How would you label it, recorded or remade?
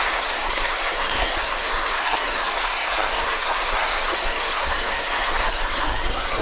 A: remade